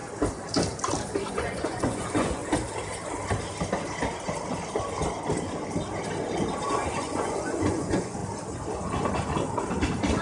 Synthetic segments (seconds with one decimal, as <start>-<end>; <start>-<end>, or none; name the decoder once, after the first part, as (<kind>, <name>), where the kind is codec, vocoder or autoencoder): 1.3-2.4 (vocoder, Vocos); 6.7-8.2